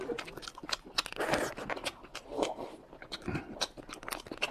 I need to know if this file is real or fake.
real